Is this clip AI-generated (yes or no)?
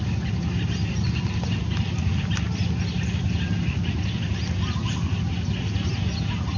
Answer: no